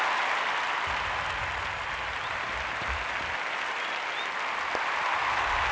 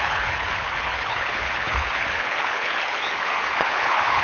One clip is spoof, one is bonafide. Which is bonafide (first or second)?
first